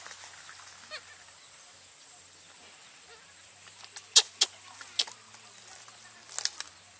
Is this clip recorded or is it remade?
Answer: recorded